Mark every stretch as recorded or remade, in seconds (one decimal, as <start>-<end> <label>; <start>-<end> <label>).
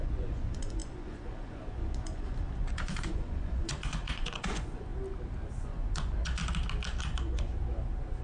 0.0-4.9 remade; 4.9-5.6 recorded; 5.6-6.4 remade; 6.4-7.0 recorded; 7.0-7.5 remade; 7.5-8.2 recorded